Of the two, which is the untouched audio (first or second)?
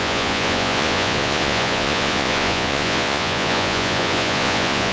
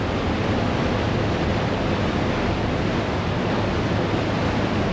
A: second